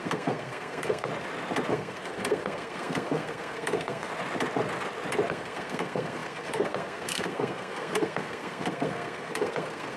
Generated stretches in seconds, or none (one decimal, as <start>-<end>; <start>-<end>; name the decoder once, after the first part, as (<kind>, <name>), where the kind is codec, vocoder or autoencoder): 0.0-1.1 (codec, SNAC); 1.7-4.1; 5.3-10.0